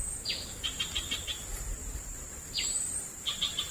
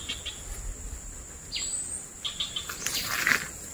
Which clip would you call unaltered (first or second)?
second